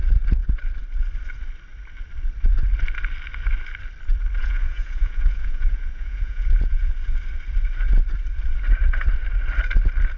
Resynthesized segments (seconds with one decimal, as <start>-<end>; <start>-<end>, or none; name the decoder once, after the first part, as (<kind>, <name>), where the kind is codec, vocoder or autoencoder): 4.4-6.9 (vocoder, Vocos)